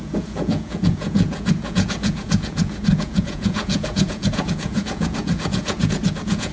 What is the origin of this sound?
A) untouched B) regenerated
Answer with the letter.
B